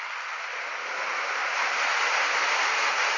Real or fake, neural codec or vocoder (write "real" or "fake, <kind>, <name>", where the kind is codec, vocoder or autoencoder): real